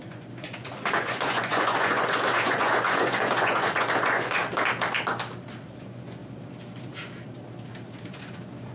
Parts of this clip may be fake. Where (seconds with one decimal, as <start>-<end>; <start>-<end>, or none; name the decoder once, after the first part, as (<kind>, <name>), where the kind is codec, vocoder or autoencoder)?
0.0-4.4 (vocoder, Vocos); 5.8-6.2; 8.1-8.7